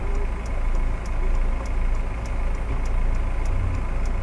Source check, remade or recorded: recorded